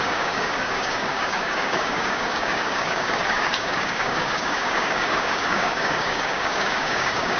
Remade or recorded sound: remade